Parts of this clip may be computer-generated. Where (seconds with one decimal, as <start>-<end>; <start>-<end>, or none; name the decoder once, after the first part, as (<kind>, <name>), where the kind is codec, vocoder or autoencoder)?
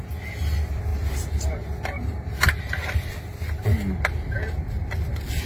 none